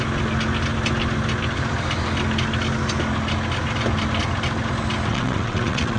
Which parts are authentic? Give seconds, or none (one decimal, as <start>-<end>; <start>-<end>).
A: 0.0-5.1